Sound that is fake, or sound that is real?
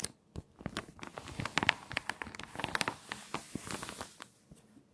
real